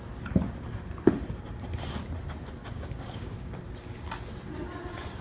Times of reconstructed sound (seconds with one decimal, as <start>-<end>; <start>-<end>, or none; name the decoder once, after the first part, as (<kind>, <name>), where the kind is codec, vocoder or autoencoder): 2.6-3.6 (codec, DAC)